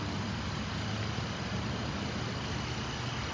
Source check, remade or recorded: recorded